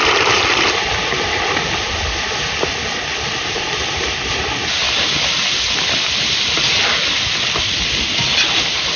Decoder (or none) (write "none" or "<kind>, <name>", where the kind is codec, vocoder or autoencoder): vocoder, BigVGAN v2